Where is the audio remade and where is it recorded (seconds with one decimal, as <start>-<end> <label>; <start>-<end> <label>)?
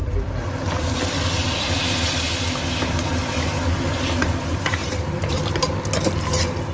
0.0-1.8 remade; 1.8-4.8 recorded; 4.8-5.3 remade; 5.3-6.7 recorded